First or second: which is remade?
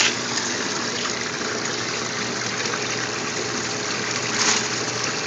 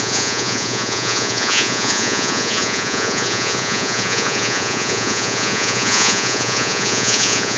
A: second